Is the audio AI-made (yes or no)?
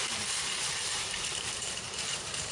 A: yes